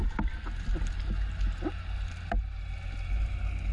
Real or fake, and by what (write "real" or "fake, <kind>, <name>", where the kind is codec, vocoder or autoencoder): real